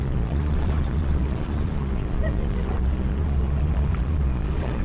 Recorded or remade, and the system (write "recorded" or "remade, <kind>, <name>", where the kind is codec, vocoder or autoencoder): remade, vocoder, Vocos